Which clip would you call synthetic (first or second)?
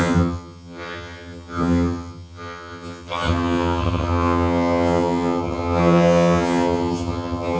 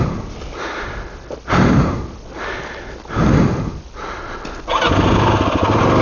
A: first